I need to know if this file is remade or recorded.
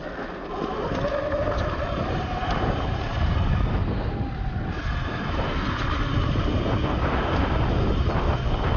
recorded